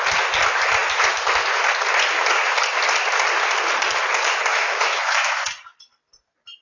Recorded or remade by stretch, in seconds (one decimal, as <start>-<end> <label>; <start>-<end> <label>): 0.0-4.5 recorded; 4.5-5.4 remade; 5.4-6.6 recorded